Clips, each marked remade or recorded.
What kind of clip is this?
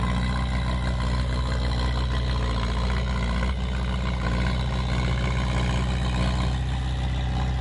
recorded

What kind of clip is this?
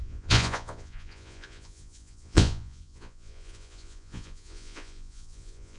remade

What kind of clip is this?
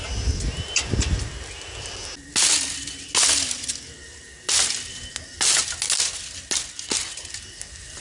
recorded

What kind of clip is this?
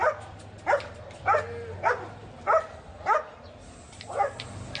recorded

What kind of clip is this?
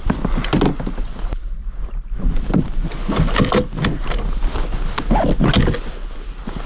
recorded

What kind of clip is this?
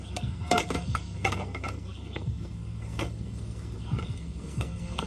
remade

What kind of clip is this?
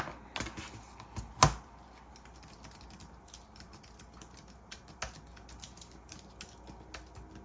recorded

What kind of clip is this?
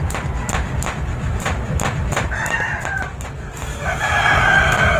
recorded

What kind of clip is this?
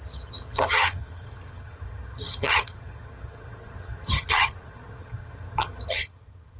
remade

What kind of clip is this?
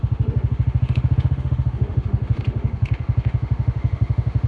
remade